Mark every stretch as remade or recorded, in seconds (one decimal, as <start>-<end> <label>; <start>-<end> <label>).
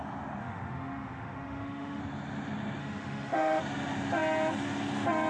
0.0-0.4 recorded; 0.4-2.0 remade; 2.0-2.8 recorded; 2.8-3.6 remade; 3.6-5.3 recorded